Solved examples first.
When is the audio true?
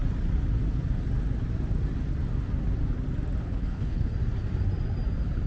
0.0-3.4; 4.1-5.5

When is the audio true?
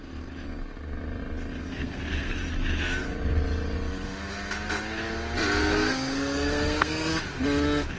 0.0-1.7; 2.4-5.6; 7.1-8.0